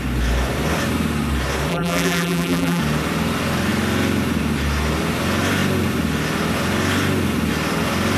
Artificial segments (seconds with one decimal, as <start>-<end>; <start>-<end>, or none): 1.7-2.8